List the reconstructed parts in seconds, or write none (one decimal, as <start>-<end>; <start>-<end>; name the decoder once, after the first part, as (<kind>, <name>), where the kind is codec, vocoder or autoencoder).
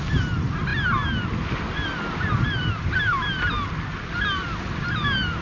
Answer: none